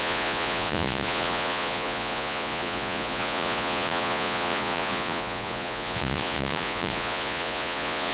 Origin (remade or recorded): remade